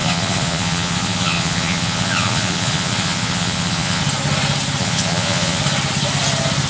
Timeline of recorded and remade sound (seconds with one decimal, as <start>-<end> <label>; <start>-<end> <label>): 0.0-4.0 remade; 4.0-4.8 recorded; 4.8-5.6 remade; 5.6-6.7 recorded

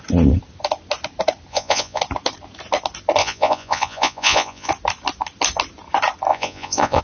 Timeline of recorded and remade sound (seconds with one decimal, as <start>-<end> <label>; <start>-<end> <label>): 0.0-1.5 recorded; 1.5-2.0 remade; 2.0-3.2 recorded; 3.2-4.7 remade; 4.7-6.3 recorded; 6.3-7.0 remade

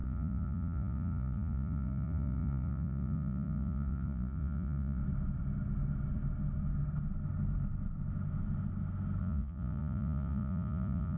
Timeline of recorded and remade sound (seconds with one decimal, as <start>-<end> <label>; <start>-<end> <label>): 0.0-5.0 remade; 5.0-9.2 recorded; 9.2-11.2 remade

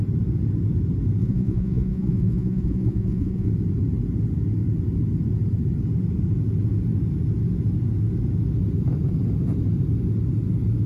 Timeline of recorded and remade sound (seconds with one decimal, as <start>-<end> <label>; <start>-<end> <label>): 0.0-1.2 recorded; 1.2-3.5 remade; 3.5-10.9 recorded

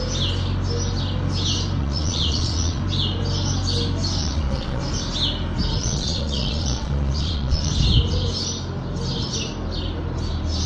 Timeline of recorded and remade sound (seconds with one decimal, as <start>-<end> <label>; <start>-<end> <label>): 0.0-1.8 recorded; 1.8-2.8 remade; 2.8-4.2 recorded; 4.2-4.8 remade; 4.8-5.8 recorded; 5.8-7.7 remade; 7.7-10.7 recorded

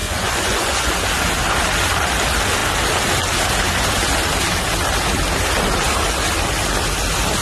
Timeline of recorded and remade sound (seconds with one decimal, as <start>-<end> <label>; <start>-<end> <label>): 0.0-0.9 remade; 0.9-7.4 recorded

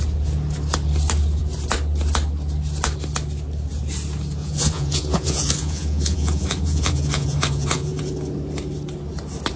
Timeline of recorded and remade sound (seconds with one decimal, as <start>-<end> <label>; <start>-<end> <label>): 0.0-4.4 recorded; 4.4-8.0 remade; 8.0-9.6 recorded

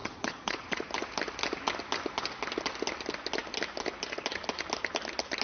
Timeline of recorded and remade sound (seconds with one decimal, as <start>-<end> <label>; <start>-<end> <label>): 0.0-0.9 remade; 0.9-5.4 recorded